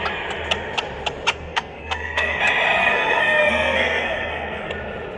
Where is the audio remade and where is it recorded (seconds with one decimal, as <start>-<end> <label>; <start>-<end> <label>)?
0.0-1.3 recorded; 1.3-2.4 remade; 2.4-2.8 recorded; 2.8-4.7 remade; 4.7-5.2 recorded